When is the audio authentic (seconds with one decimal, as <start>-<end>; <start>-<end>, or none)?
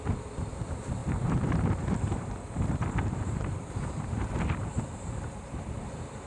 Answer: none